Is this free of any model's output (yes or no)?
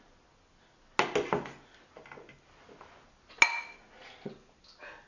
yes